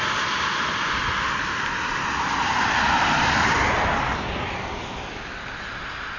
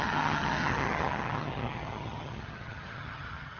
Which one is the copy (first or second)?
second